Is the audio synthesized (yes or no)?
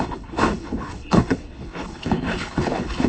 yes